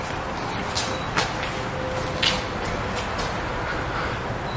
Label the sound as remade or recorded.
recorded